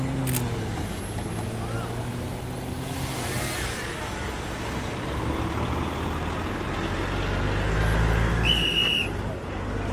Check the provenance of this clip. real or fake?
real